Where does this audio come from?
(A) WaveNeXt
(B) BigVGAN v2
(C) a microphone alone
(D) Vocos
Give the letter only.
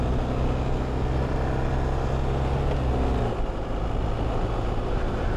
C